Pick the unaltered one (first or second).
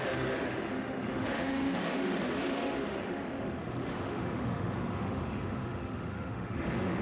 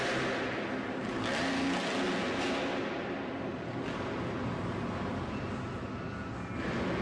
second